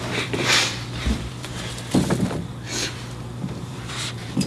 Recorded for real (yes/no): no